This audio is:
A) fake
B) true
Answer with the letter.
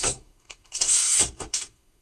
A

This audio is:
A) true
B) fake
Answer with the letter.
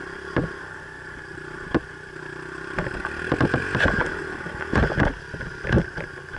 A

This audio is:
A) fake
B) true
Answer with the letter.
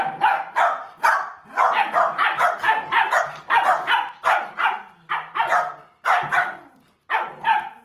B